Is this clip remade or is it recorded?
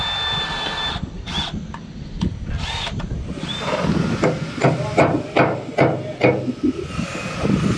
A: recorded